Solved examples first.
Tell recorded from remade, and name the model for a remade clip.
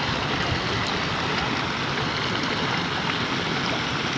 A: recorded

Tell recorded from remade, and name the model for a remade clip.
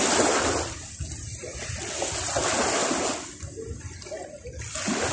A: recorded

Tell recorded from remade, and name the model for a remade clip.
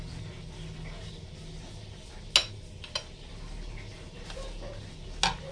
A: recorded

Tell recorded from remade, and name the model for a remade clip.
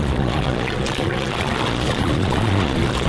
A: remade, vocoder, Vocos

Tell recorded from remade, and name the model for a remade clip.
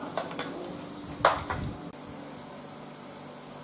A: recorded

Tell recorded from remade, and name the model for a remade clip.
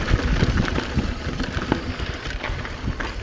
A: recorded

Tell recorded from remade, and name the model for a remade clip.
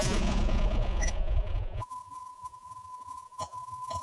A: remade, vocoder, Vocos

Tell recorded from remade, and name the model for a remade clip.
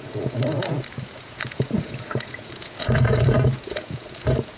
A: remade, vocoder, Vocos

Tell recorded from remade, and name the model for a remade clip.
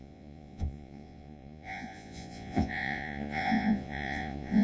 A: remade, vocoder, Vocos